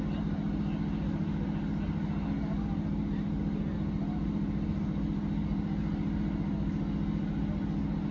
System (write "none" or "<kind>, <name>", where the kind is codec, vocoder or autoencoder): none